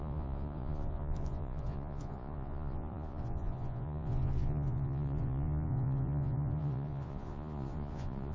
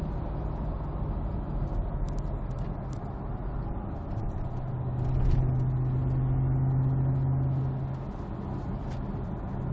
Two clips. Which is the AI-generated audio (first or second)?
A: first